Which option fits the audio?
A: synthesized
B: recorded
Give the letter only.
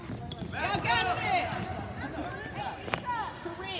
B